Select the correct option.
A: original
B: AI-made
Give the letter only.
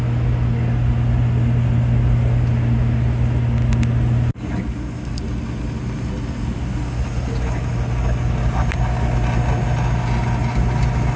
A